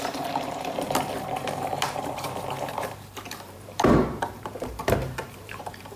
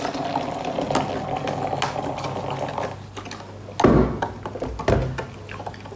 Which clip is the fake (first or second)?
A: first